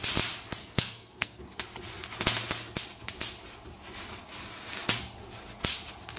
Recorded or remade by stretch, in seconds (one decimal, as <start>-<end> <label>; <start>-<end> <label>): 0.0-0.6 recorded; 0.6-1.4 remade; 1.4-6.2 recorded